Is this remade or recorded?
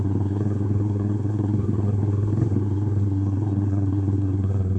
remade